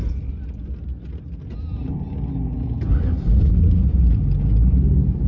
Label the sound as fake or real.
real